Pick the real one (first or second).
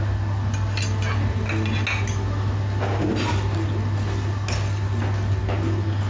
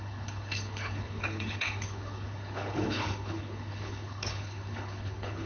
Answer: first